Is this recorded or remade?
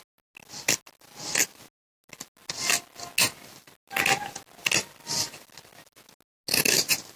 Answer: recorded